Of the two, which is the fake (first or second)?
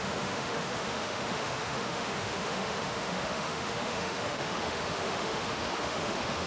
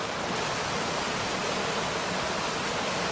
first